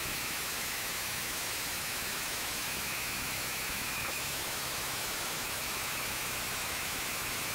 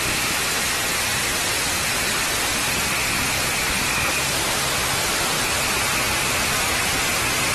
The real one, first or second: second